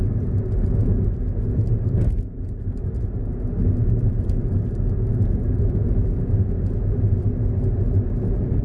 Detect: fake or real real